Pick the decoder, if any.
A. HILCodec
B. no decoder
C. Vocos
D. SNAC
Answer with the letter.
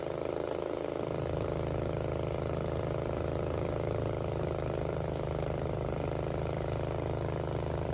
B